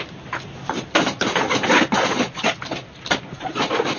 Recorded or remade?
recorded